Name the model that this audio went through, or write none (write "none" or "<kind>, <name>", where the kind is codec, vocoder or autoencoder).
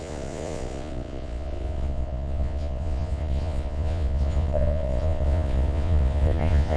vocoder, Vocos